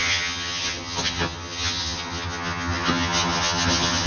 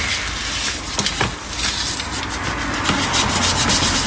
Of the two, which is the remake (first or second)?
first